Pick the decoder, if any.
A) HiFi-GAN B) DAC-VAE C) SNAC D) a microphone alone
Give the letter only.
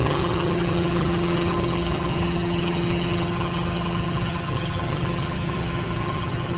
A